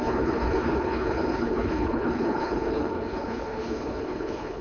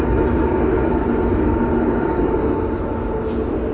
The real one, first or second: second